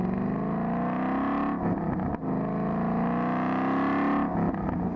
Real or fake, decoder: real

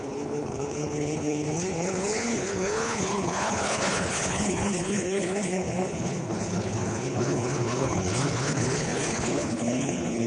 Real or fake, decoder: fake, codec, HILCodec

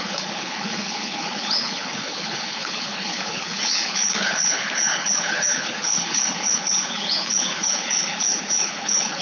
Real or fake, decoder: fake, codec, HILCodec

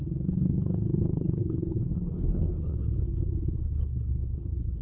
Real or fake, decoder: fake, codec, HILCodec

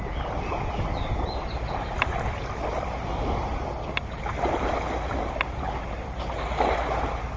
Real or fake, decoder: real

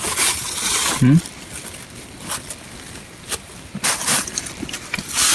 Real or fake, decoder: real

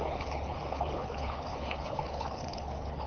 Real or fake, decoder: fake, codec, HILCodec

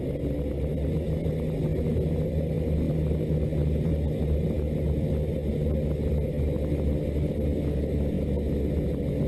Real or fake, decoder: real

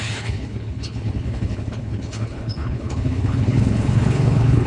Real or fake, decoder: fake, codec, HILCodec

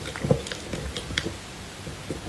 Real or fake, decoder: real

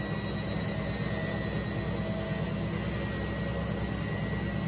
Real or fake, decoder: real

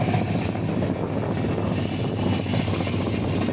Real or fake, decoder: real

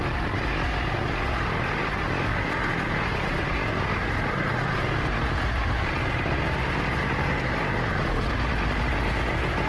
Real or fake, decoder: real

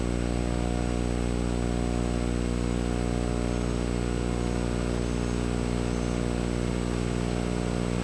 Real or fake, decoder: real